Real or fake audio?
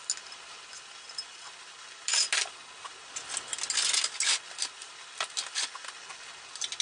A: real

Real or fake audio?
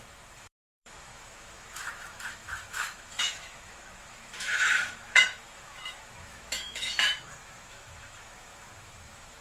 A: fake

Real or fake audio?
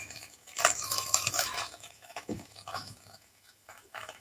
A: fake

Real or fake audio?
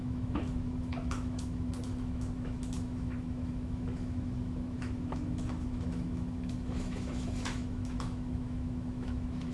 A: fake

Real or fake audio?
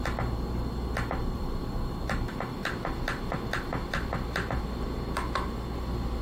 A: real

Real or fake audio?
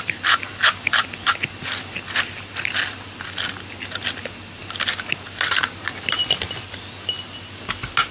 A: real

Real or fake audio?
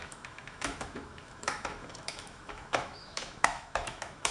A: fake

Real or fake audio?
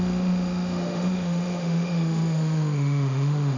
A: fake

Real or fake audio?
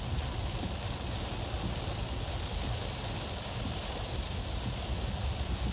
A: real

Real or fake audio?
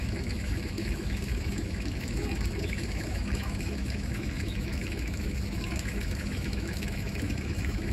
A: fake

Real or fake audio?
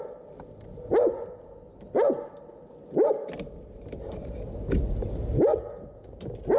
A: real